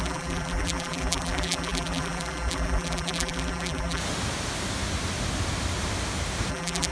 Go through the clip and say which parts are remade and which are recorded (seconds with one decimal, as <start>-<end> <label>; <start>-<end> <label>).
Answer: 0.0-4.0 remade; 4.0-6.5 recorded; 6.5-6.9 remade